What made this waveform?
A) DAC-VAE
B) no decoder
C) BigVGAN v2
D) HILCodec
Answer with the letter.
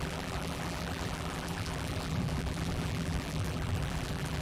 C